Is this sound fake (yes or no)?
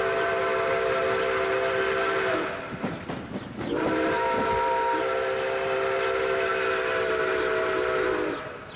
no